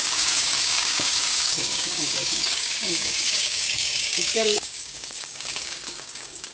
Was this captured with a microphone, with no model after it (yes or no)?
no